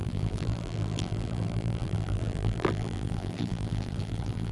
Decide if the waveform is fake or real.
fake